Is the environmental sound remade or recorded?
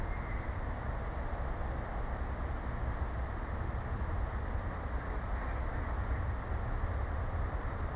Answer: recorded